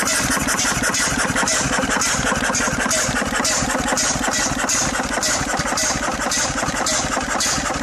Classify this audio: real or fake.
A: real